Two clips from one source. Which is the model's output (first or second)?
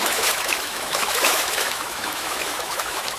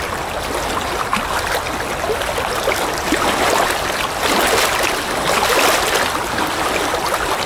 first